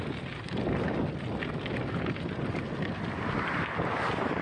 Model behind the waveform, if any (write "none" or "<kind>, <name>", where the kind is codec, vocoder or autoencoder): none